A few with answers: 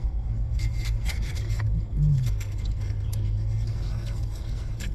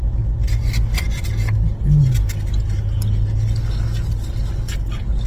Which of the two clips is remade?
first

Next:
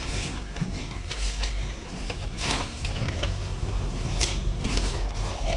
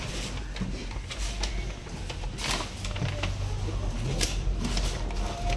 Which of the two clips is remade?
first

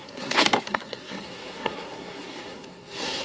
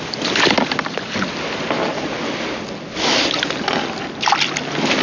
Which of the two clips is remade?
first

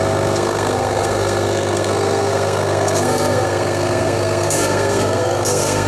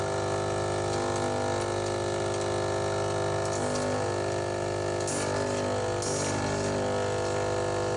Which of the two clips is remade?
first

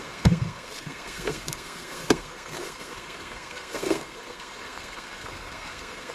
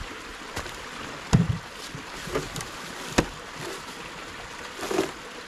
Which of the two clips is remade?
first